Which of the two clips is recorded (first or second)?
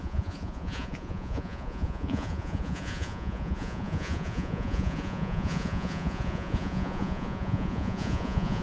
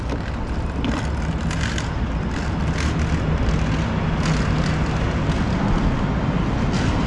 second